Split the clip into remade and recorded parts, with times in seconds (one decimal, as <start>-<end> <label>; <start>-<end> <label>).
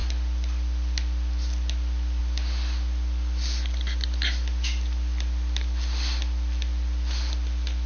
0.0-7.9 recorded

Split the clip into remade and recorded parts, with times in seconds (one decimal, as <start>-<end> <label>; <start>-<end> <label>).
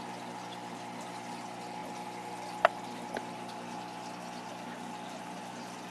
0.0-5.9 recorded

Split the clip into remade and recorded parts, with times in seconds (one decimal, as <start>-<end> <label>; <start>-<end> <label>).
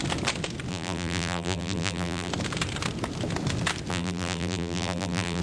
0.0-0.7 recorded; 0.7-2.3 remade; 2.3-3.9 recorded; 3.9-5.4 remade